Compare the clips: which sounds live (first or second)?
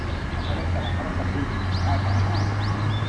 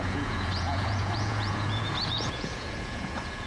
first